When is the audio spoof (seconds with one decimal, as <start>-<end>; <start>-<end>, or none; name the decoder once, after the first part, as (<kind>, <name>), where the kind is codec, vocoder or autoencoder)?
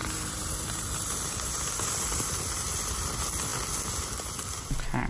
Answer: 0.0-2.5 (vocoder, BigVGAN v2)